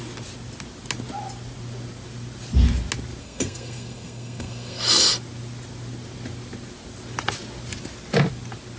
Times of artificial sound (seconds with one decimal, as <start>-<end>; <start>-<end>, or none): 3.2-4.8